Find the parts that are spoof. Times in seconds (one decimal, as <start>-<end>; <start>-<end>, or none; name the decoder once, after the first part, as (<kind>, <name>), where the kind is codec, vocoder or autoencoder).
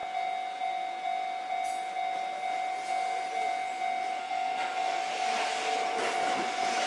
4.2-5.0 (codec, SNAC)